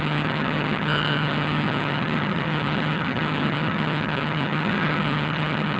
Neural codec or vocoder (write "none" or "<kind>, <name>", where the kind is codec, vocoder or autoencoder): vocoder, HiFi-GAN